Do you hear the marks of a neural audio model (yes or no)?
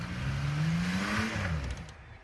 no